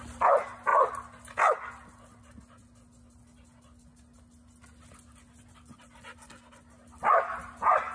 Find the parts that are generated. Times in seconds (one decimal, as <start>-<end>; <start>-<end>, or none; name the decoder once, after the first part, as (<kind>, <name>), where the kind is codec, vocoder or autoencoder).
none